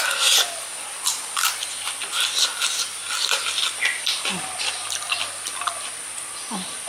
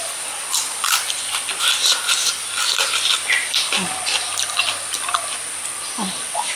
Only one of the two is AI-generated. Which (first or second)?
second